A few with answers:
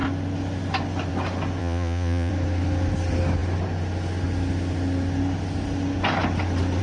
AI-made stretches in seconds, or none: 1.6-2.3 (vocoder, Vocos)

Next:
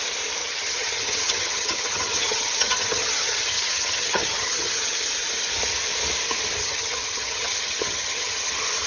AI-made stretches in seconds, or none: 0.4-5.0 (vocoder, HiFi-GAN); 6.6-8.5